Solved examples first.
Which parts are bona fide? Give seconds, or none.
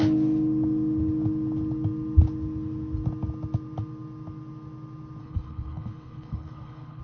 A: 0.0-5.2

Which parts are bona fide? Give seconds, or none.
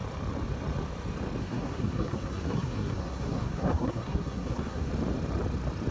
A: 0.0-1.4; 4.9-5.9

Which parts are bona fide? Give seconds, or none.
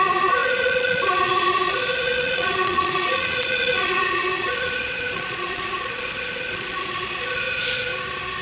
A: 7.9-8.4